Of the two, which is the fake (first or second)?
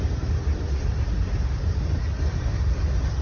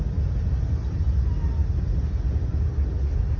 first